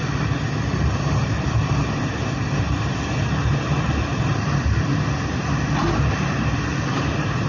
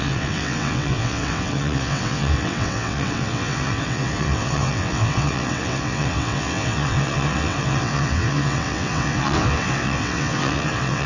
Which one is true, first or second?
first